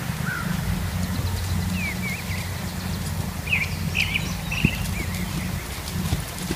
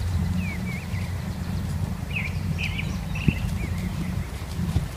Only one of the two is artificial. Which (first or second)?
second